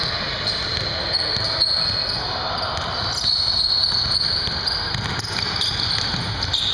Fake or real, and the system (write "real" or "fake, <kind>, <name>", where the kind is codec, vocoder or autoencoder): real